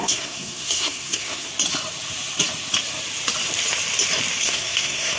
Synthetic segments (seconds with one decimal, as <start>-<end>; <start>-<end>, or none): 0.0-1.5; 4.4-5.2

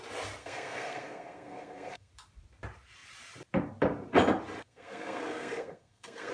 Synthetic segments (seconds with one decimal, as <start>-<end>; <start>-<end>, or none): 0.4-2.1; 4.6-6.3

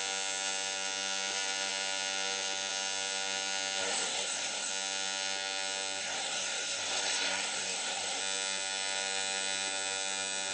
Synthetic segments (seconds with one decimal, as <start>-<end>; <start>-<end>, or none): 3.8-4.7; 6.0-8.2

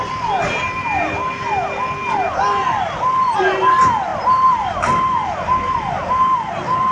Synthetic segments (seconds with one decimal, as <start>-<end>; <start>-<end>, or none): none

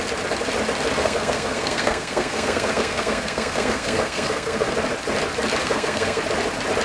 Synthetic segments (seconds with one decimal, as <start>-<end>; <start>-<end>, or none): 1.0-4.7; 5.6-6.2

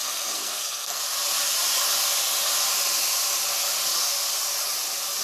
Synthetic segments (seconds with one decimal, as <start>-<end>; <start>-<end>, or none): 0.0-1.0

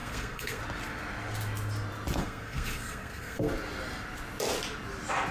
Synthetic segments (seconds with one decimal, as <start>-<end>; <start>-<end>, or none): 0.0-0.6; 2.2-3.5